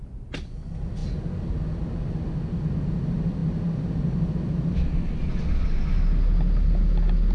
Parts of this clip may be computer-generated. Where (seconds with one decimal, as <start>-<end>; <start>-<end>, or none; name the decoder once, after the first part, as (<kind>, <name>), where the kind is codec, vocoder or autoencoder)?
none